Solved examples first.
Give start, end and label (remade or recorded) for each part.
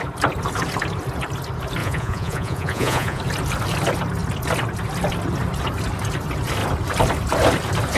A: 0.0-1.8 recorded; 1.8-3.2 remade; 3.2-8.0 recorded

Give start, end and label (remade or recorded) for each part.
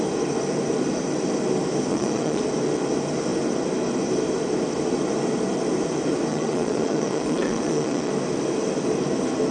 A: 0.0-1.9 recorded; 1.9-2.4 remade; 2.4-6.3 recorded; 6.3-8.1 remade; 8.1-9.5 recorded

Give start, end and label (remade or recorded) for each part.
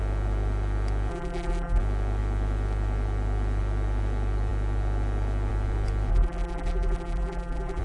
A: 0.0-1.1 recorded; 1.1-1.8 remade; 1.8-6.1 recorded; 6.1-7.8 remade